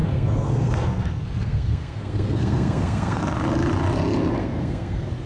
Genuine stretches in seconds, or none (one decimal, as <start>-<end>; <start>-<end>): 3.2-4.4